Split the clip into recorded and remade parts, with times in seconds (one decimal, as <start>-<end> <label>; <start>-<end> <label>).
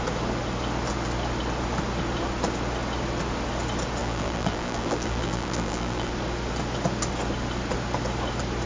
0.0-4.0 recorded; 4.0-6.1 remade; 6.1-8.7 recorded